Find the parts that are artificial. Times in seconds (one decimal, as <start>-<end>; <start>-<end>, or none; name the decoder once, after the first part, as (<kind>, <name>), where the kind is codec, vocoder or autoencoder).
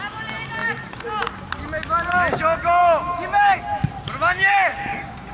4.7-5.3 (codec, DAC)